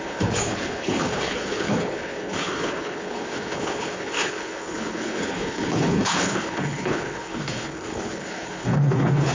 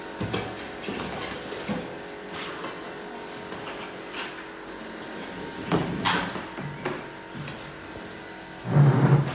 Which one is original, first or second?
second